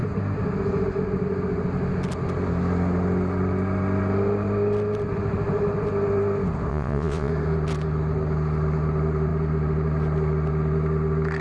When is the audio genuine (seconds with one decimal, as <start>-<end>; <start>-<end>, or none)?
0.0-6.7; 7.3-11.4